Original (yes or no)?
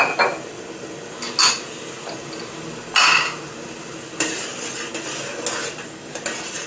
yes